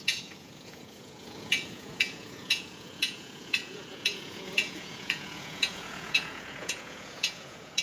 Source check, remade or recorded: remade